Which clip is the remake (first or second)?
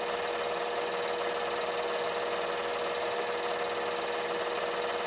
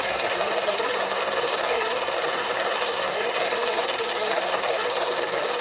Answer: second